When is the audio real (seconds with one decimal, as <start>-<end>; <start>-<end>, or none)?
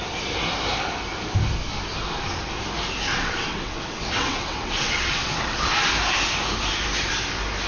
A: 0.0-3.1; 5.7-7.7